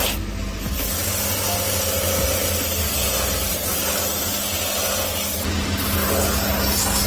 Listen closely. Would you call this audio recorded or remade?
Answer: recorded